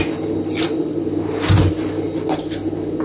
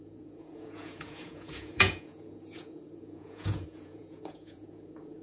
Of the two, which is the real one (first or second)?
first